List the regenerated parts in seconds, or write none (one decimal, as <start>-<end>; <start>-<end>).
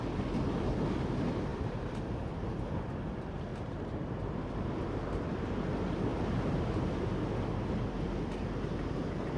1.5-2.8; 3.5-4.4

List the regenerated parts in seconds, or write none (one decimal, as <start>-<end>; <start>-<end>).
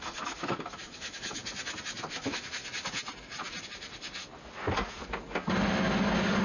0.0-1.4; 2.1-2.6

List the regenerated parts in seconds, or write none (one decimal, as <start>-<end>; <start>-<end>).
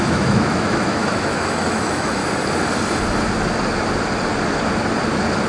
0.0-2.2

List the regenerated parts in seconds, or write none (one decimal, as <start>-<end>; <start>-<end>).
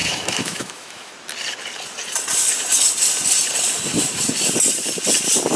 0.0-1.1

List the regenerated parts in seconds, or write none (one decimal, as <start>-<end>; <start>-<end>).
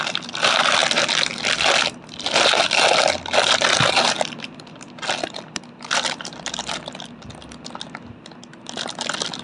none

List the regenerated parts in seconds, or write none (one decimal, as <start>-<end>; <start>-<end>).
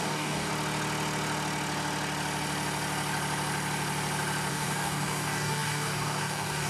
0.0-0.5; 4.5-6.7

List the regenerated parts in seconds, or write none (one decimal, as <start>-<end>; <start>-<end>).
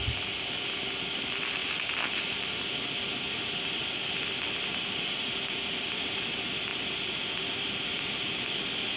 none